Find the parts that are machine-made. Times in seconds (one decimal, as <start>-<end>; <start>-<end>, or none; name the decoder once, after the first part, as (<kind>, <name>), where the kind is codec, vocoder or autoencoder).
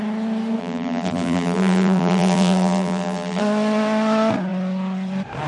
0.6-3.4 (vocoder, BigVGAN v2)